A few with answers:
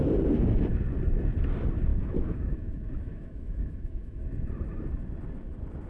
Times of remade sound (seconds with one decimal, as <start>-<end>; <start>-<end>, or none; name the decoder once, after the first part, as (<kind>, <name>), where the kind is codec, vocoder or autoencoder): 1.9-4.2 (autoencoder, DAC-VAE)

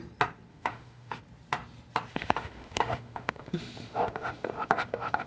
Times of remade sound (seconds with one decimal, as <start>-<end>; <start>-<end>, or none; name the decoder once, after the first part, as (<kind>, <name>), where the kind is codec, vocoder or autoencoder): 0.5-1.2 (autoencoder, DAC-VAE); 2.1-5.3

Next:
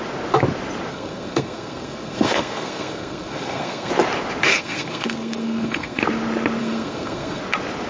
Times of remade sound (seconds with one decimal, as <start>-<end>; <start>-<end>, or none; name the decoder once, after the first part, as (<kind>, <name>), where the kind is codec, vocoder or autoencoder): 0.9-3.9 (codec, SNAC); 4.5-6.0; 6.6-7.4

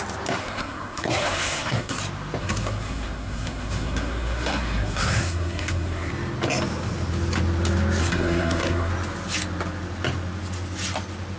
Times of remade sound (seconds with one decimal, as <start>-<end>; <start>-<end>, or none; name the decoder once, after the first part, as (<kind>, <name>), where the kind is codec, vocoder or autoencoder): 0.4-2.0 (codec, SNAC); 2.4-6.1; 8.0-8.9